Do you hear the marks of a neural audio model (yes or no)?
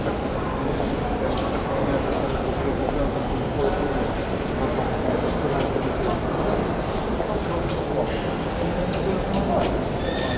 no